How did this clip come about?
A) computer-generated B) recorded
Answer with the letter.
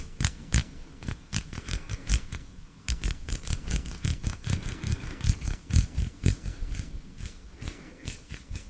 A